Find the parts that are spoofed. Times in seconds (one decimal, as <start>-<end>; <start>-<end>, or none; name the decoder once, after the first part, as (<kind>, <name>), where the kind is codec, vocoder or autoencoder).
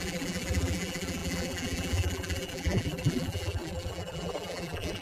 0.0-5.0 (vocoder, BigVGAN v2)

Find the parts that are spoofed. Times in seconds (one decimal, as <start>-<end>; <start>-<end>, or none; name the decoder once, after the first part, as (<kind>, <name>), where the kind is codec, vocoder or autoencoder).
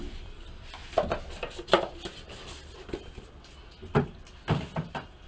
0.0-0.8 (vocoder, BigVGAN v2); 4.0-5.3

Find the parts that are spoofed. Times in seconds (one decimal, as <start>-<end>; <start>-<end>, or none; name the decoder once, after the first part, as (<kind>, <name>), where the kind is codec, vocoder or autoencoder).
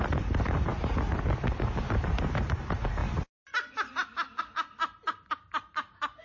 0.0-0.7 (vocoder, BigVGAN v2); 1.9-3.0; 4.4-6.2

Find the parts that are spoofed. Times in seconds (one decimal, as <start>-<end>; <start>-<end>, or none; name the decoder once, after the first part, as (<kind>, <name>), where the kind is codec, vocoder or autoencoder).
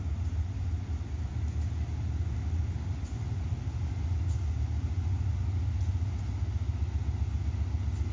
none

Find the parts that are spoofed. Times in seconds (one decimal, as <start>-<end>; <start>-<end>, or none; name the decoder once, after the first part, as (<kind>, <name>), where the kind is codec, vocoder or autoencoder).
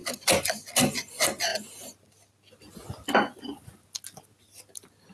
0.0-1.1 (vocoder, BigVGAN v2)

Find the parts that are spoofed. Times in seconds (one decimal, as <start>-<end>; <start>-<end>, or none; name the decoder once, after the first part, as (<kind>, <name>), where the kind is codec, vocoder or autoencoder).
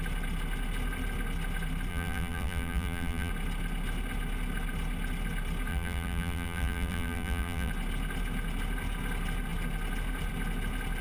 1.9-3.3 (vocoder, BigVGAN v2); 5.7-7.7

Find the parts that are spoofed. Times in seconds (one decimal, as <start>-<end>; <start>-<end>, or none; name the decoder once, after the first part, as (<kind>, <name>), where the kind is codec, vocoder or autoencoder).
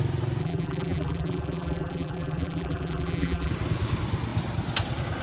0.4-3.5 (vocoder, BigVGAN v2)